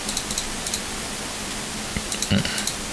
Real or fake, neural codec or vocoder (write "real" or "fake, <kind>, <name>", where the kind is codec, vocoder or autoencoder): real